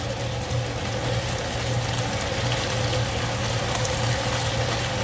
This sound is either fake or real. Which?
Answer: real